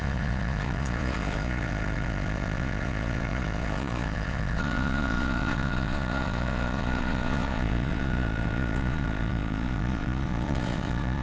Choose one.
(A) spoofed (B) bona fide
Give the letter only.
A